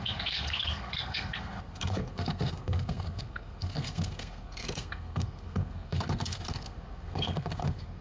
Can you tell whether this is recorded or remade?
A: remade